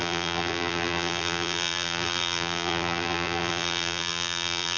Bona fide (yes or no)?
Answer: no